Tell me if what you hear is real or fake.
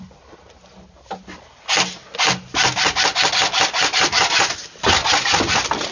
real